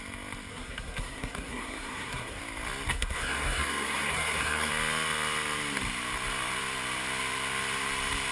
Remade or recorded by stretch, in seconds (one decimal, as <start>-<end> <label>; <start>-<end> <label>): 0.0-0.5 recorded; 0.5-2.4 remade; 2.4-2.9 recorded; 2.9-4.7 remade; 4.7-8.3 recorded